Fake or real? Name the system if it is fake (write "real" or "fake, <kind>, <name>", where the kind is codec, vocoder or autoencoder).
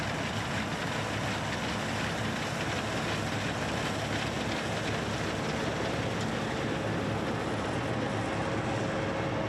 real